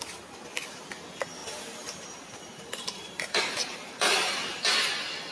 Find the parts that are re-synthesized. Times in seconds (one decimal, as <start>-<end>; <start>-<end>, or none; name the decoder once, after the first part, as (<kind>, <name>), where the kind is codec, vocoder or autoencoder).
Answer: 1.4-4.6 (vocoder, BigVGAN v2)